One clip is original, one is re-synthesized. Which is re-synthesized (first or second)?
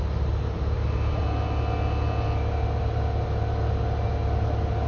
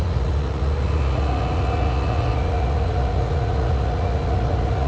second